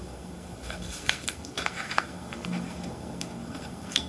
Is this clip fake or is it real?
fake